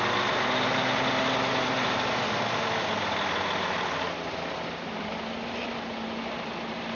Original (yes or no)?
yes